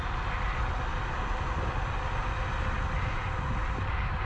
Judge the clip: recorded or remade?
recorded